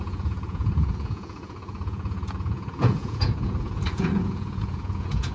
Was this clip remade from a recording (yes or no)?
yes